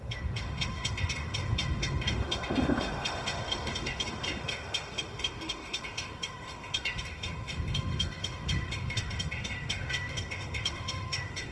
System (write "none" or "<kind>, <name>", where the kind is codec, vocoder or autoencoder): autoencoder, DAC-VAE